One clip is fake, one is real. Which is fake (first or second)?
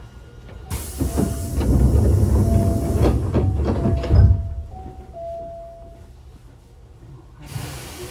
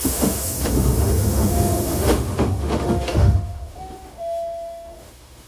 second